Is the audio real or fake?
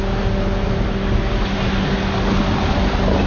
real